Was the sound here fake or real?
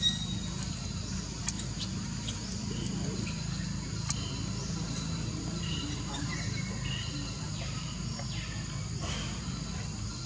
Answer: real